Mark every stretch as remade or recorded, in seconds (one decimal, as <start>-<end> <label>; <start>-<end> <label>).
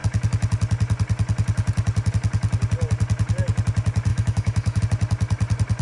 0.0-4.1 recorded; 4.1-4.8 remade; 4.8-5.8 recorded